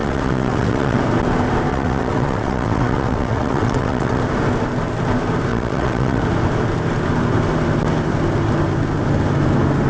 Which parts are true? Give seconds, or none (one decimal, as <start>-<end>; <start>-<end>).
1.0-1.7; 4.2-5.5; 6.2-9.9